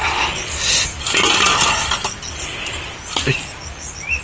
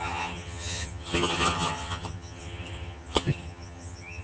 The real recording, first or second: first